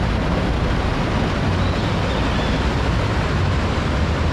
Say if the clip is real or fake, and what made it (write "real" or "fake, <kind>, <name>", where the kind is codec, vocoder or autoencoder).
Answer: real